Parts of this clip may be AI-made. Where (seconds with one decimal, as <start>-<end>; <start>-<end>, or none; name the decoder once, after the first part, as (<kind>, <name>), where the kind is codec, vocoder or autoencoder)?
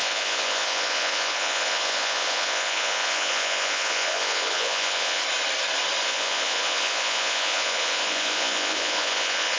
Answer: 0.0-5.2 (vocoder, Vocos); 6.0-9.6